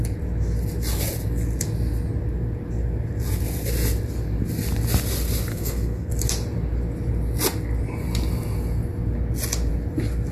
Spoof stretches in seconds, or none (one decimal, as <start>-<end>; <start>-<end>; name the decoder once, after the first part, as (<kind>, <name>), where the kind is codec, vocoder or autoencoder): 5.5-6.1 (codec, SNAC)